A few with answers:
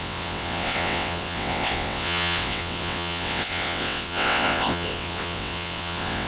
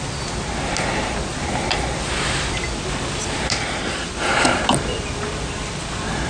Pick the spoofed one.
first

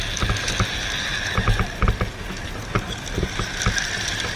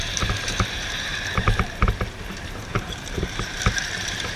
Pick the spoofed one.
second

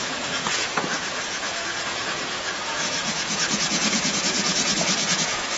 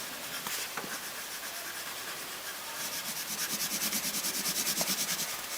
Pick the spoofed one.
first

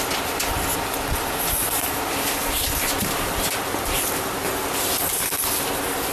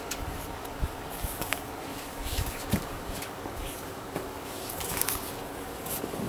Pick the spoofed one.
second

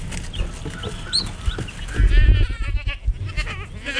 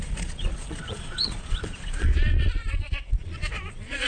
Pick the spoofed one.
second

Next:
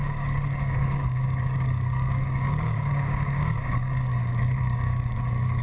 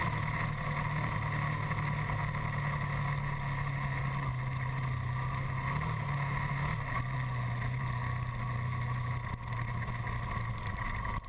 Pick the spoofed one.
first